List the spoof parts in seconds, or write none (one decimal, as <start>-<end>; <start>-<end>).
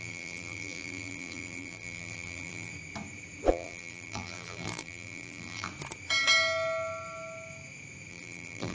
0.0-2.7; 3.5-5.7; 8.1-8.7